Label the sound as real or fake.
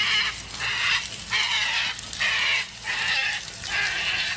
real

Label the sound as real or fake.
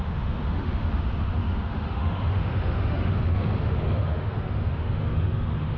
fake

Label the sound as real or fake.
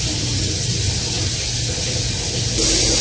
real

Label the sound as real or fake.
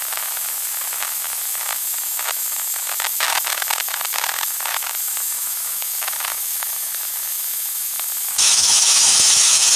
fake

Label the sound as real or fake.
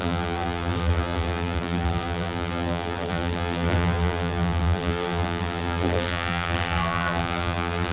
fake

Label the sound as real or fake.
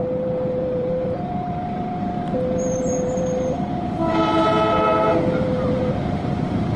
fake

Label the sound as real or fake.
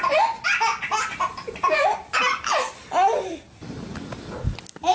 real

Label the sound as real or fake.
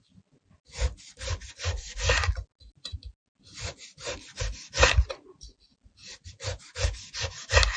real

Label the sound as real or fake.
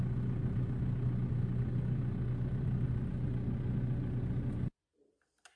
real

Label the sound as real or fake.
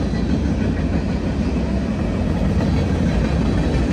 real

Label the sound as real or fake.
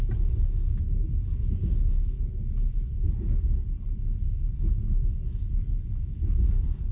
real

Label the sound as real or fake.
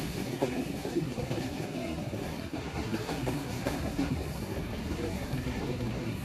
fake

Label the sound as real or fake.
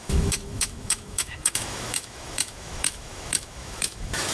fake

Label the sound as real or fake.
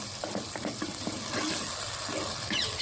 real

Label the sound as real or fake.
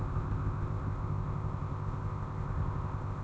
fake